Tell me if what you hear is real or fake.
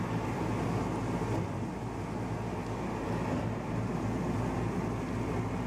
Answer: real